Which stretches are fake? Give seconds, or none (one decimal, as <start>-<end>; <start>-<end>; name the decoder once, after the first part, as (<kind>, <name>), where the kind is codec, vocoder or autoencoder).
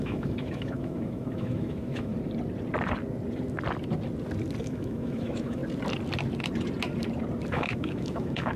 0.0-2.1 (autoencoder, DAC-VAE); 4.6-5.6; 7.5-8.6